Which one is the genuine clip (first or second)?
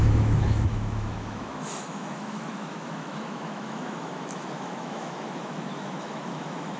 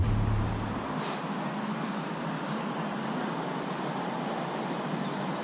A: second